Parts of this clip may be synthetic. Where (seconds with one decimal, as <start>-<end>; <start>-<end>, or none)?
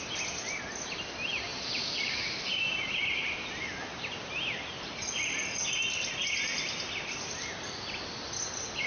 1.5-5.0